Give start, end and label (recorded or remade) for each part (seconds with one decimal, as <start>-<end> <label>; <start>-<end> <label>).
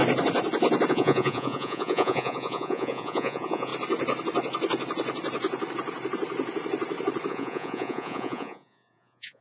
0.0-0.9 recorded; 0.9-3.7 remade; 3.7-7.3 recorded; 7.3-9.4 remade